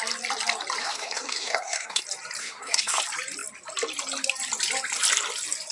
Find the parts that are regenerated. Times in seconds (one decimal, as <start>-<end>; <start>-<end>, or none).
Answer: 0.8-2.0; 2.4-3.0